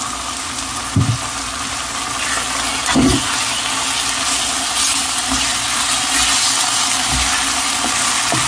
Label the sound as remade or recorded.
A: recorded